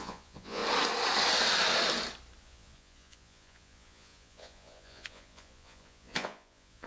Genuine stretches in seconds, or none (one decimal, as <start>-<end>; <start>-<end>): 0.6-2.4